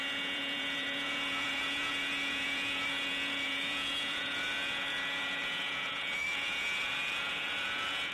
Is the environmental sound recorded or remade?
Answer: remade